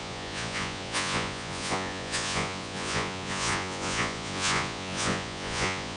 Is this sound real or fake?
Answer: fake